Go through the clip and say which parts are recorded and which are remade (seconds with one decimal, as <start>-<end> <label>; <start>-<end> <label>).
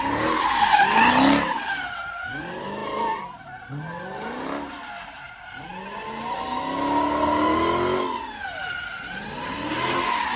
0.0-10.4 recorded